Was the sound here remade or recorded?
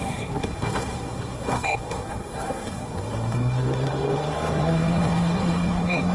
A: remade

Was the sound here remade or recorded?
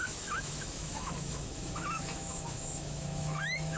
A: remade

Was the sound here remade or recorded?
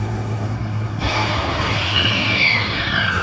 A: remade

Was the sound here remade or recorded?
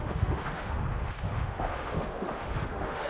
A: remade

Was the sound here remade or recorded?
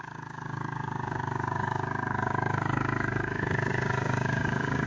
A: remade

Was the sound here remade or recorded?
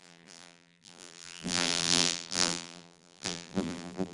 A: remade